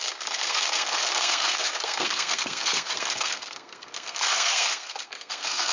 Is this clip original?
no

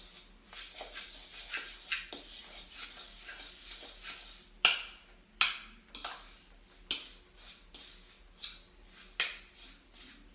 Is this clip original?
yes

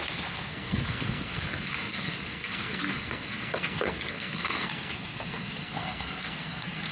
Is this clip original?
no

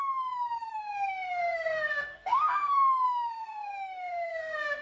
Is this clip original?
no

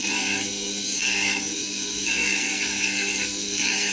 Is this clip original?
no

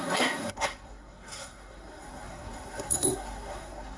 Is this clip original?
no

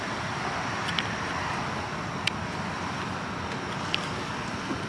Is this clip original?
yes